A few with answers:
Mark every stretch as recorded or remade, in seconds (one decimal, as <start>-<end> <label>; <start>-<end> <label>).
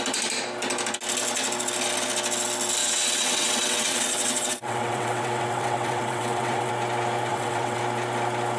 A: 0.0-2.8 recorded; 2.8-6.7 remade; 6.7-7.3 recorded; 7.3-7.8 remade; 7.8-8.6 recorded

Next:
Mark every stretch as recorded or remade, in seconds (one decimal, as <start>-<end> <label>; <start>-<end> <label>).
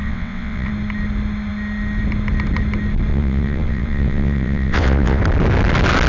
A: 0.0-0.7 remade; 0.7-3.1 recorded; 3.1-5.2 remade; 5.2-6.1 recorded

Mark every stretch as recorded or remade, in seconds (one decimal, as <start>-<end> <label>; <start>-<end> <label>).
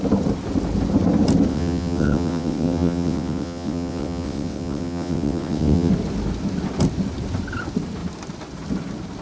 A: 0.0-1.5 recorded; 1.5-5.9 remade; 5.9-9.2 recorded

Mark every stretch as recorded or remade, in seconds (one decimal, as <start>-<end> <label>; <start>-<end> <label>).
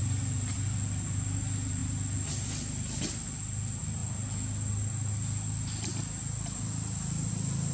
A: 0.0-7.7 recorded